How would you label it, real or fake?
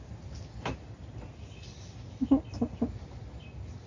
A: real